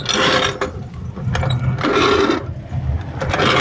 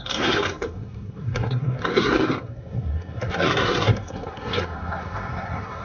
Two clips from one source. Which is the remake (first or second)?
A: second